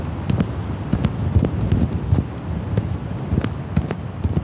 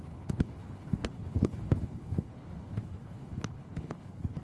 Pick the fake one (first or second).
second